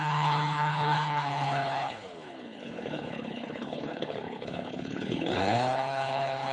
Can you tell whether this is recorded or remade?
remade